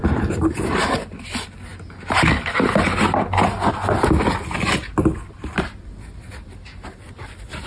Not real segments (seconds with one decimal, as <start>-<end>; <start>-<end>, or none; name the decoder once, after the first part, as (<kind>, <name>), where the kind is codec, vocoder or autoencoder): none